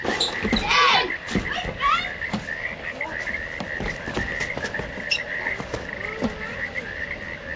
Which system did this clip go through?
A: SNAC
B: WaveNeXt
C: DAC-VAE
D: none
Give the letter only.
D